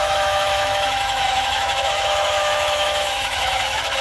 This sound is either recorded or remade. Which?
remade